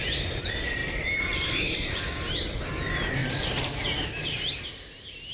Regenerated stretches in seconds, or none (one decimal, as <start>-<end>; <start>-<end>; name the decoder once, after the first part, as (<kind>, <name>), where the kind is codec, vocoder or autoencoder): 0.8-2.0 (vocoder, BigVGAN v2); 3.2-4.6